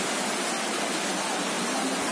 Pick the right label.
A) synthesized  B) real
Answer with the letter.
B